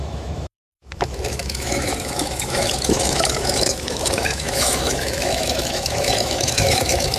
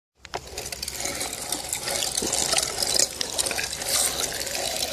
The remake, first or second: first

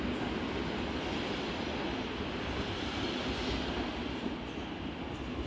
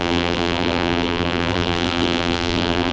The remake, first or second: second